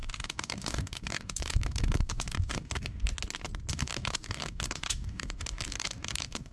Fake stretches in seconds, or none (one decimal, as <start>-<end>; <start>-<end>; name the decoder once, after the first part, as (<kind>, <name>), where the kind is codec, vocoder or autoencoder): 0.0-3.1 (codec, DAC); 3.7-6.5